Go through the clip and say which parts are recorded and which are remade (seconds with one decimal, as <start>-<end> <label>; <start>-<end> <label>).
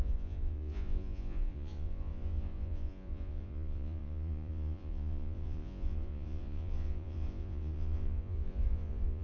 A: 0.0-9.2 remade